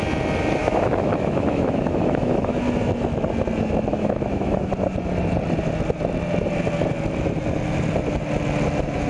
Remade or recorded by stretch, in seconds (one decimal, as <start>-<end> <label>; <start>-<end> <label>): 0.0-0.6 recorded; 0.6-2.6 remade; 2.6-3.9 recorded; 3.9-4.7 remade; 4.7-9.1 recorded